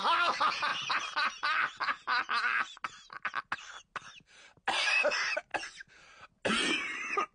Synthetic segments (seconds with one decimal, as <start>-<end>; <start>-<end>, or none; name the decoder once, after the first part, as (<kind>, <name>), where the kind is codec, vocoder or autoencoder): none